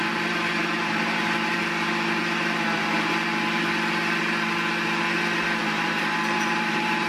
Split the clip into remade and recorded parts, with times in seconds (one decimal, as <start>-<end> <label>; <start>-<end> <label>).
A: 0.0-1.6 remade; 1.6-5.6 recorded; 5.6-7.1 remade